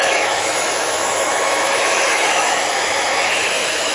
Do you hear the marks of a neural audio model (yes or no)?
yes